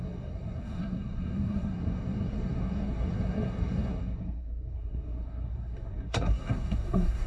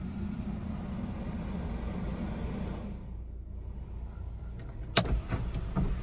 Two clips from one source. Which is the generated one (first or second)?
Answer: first